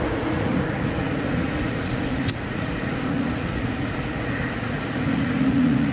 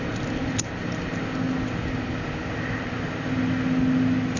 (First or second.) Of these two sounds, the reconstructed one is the first